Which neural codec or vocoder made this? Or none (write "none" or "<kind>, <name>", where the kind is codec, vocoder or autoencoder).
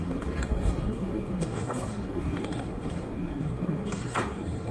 codec, SNAC